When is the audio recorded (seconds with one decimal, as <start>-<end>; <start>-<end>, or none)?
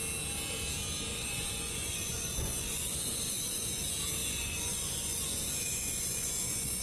0.0-1.1; 3.8-4.2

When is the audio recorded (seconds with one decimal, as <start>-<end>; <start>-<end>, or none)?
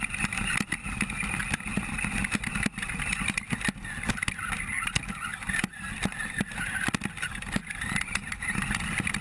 0.0-9.2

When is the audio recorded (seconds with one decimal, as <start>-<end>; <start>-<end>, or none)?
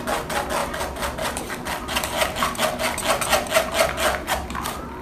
0.0-0.6; 2.6-5.0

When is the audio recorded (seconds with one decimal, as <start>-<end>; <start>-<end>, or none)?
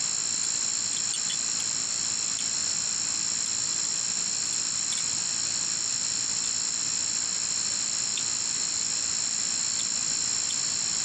0.0-11.0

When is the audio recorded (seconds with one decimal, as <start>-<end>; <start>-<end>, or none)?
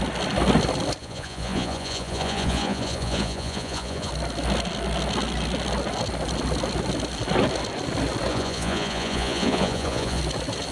0.0-1.0; 4.1-8.3; 10.2-10.7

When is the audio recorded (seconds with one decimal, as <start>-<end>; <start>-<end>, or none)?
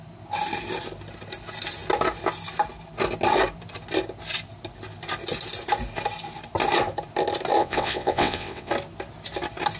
0.0-7.6; 8.7-9.8